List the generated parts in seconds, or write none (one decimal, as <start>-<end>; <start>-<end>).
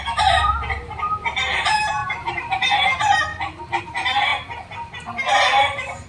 0.0-3.3; 3.8-4.3; 5.3-6.1